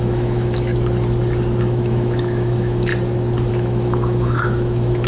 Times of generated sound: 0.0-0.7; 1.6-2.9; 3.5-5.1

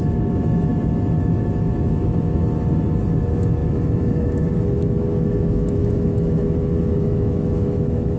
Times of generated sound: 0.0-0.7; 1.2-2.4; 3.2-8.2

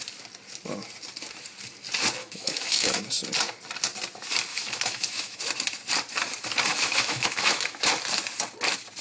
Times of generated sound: 2.2-3.0; 4.5-5.5; 6.7-7.9

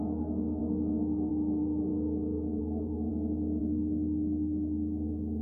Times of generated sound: 0.0-3.1; 3.6-5.4

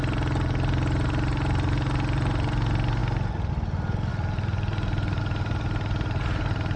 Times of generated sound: none